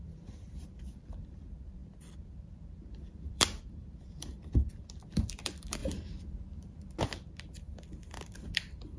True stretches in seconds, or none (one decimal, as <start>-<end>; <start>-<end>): none